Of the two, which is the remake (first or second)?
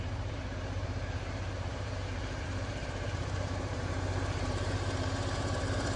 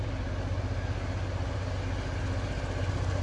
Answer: first